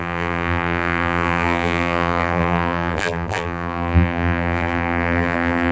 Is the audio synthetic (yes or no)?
yes